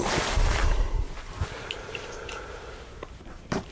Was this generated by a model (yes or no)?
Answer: yes